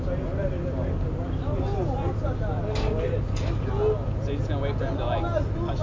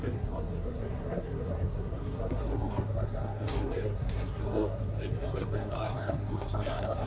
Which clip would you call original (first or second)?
first